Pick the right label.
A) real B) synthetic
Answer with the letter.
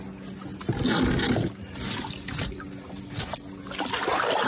A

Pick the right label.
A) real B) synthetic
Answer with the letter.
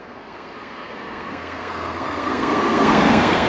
B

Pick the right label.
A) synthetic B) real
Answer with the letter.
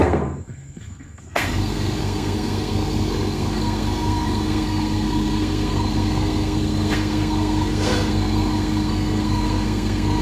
A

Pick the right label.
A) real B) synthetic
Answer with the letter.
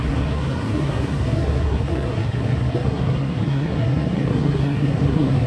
B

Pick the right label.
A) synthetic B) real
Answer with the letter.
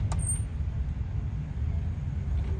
B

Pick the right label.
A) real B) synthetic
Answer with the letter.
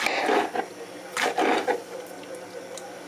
A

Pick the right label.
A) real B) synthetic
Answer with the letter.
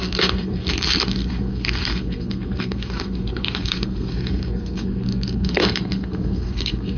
B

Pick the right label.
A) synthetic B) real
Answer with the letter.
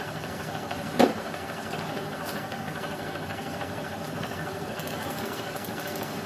A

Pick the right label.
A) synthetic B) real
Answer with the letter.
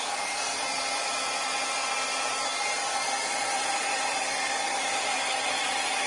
B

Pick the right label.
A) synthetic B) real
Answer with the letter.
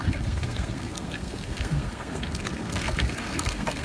A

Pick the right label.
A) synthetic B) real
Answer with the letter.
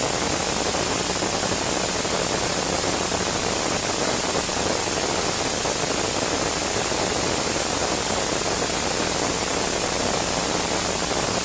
B